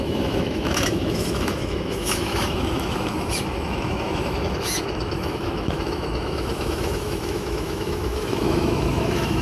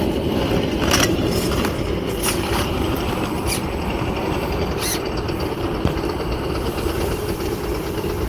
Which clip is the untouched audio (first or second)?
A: second